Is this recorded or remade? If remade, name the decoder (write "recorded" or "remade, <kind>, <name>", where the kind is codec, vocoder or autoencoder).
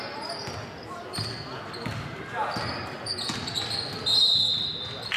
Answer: recorded